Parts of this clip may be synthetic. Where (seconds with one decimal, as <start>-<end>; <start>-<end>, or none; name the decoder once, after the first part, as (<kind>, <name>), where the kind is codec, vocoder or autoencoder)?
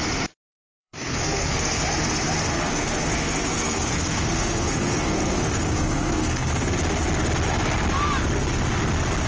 0.5-1.8 (codec, SNAC); 2.5-6.5